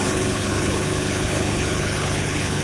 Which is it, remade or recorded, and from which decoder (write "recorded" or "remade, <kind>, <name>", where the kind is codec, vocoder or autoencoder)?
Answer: remade, codec, HILCodec